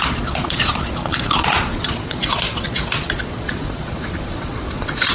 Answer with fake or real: fake